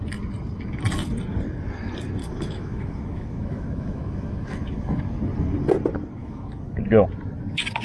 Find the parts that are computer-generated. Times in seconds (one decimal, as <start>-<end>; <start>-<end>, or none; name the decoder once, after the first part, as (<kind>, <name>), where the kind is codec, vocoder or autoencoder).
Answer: 2.2-5.0 (autoencoder, DAC-VAE); 6.2-6.8